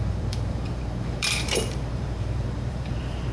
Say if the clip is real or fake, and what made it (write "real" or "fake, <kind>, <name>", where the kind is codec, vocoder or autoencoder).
fake, vocoder, BigVGAN v2